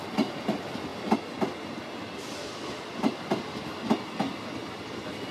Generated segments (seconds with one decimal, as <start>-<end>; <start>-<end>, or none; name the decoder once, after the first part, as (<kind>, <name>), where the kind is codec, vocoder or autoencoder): none